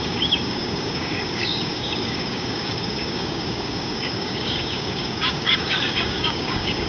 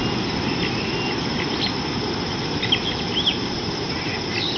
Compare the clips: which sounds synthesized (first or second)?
first